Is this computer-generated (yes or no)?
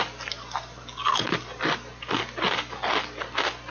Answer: no